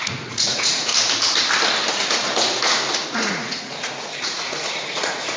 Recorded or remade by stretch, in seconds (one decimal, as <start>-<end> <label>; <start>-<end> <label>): 0.0-0.9 remade; 0.9-1.9 recorded; 1.9-5.4 remade